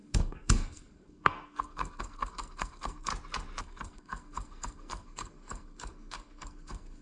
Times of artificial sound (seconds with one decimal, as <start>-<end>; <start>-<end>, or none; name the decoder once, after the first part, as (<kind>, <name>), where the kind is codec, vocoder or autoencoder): 0.0-3.1 (codec, SNAC); 3.6-7.0